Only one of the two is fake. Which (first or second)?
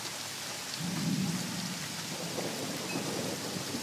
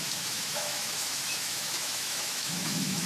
second